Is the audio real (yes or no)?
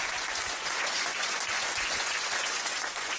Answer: no